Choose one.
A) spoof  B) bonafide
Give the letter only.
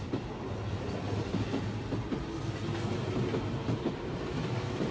B